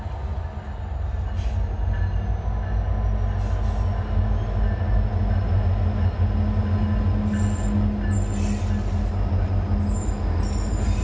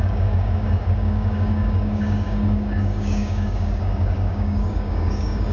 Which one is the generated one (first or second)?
second